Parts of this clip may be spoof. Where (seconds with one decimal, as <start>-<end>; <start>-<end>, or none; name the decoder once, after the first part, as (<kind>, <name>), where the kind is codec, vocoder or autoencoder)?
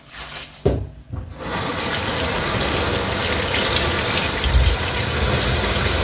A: 2.1-2.6 (vocoder, Vocos)